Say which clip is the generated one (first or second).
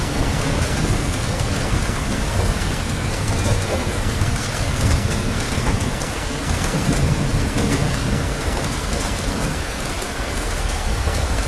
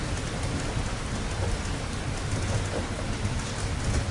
first